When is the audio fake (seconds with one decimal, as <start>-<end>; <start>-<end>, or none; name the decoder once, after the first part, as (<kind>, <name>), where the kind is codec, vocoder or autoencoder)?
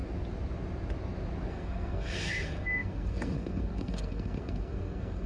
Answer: 1.5-5.3 (codec, SNAC)